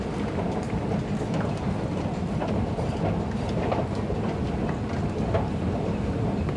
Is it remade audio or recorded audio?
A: recorded